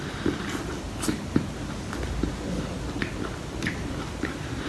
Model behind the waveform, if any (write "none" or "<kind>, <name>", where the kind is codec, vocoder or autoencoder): none